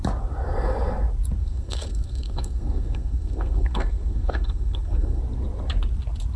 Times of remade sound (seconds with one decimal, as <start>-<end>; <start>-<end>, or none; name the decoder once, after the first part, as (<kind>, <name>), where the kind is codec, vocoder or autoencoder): 1.4-5.2 (codec, SNAC)